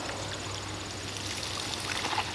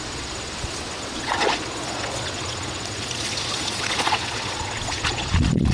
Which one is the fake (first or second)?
second